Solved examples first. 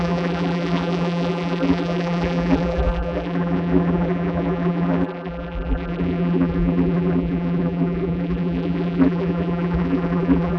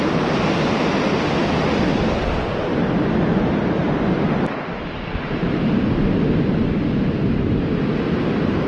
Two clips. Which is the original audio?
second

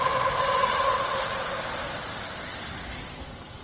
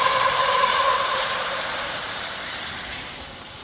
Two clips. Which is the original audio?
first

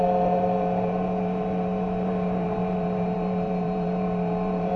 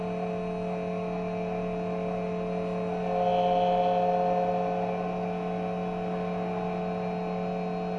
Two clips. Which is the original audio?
second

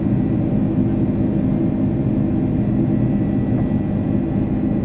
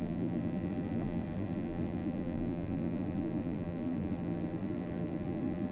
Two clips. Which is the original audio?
first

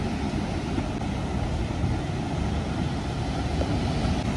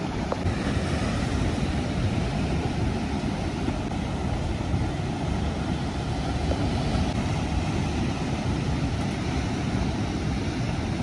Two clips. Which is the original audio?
first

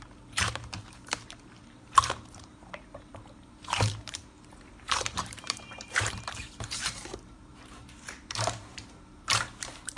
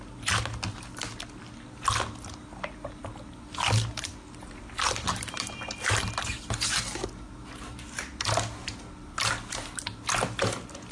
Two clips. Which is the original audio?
second